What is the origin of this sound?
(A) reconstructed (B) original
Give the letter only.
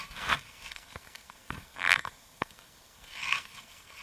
A